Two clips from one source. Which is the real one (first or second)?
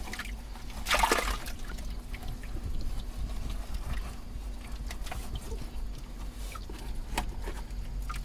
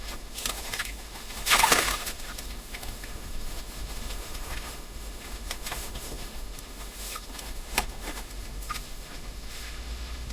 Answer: first